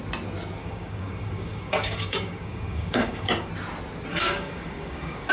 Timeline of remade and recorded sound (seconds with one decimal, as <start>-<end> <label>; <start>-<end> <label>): 0.0-0.6 recorded; 0.6-3.5 remade; 3.5-4.1 recorded; 4.1-5.3 remade